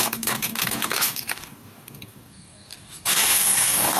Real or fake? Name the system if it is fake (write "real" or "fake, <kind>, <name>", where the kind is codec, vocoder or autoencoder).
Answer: fake, codec, DAC